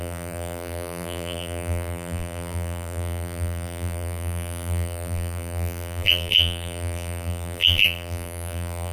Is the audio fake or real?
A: fake